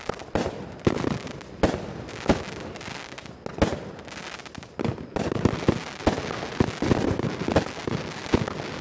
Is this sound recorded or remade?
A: recorded